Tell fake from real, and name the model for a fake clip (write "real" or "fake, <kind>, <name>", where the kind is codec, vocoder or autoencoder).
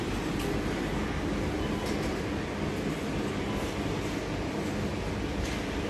real